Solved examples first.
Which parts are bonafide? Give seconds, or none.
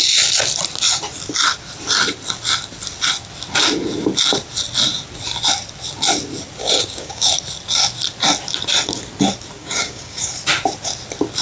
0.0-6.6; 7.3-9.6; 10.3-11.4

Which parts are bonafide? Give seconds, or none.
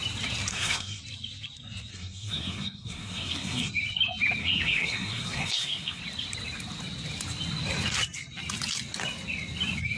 0.0-0.5; 1.0-1.9; 3.7-4.4; 6.0-10.0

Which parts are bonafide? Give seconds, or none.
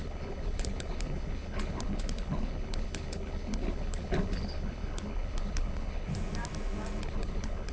6.1-7.0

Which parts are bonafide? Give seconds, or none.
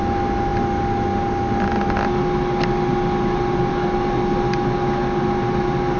0.0-6.0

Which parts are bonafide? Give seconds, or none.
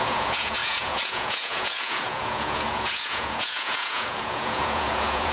none